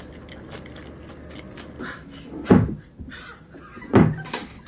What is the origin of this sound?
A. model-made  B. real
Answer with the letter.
B